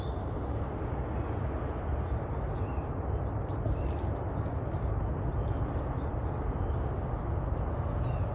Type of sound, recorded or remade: recorded